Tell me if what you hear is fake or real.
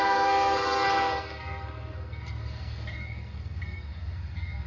fake